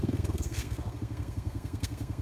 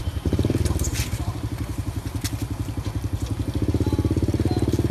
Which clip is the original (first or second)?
second